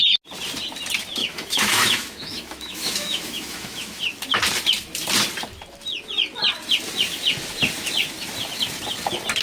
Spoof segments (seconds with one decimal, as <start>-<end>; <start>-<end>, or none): 1.2-4.0